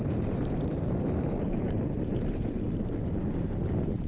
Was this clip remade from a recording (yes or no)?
no